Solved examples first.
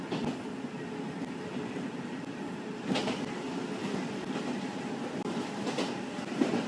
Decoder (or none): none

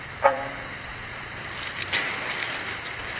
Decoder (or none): vocoder, BigVGAN v2